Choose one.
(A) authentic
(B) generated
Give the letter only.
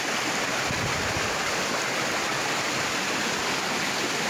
A